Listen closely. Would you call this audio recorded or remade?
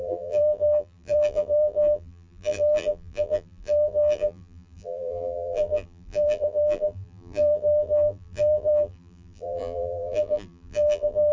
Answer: remade